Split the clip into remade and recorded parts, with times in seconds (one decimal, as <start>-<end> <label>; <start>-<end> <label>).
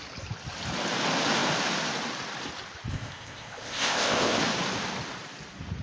0.0-2.9 recorded; 2.9-4.4 remade; 4.4-5.8 recorded